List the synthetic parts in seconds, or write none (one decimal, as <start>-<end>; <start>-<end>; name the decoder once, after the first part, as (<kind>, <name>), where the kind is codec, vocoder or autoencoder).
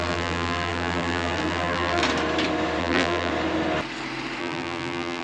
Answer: 0.0-2.0 (vocoder, BigVGAN v2); 2.8-3.3; 4.4-5.2